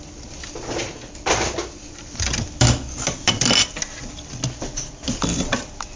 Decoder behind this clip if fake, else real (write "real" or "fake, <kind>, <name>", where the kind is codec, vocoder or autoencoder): real